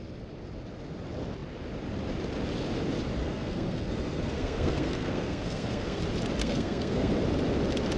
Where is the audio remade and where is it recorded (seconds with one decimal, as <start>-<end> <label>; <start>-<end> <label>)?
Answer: 0.0-3.2 recorded; 3.2-6.0 remade; 6.0-6.4 recorded; 6.4-7.1 remade; 7.1-8.0 recorded